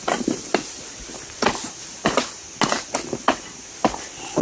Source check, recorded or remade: recorded